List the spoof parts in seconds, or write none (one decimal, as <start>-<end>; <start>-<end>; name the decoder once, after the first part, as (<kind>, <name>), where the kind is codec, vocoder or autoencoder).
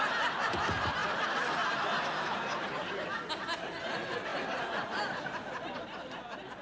none